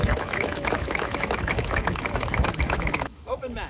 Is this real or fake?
fake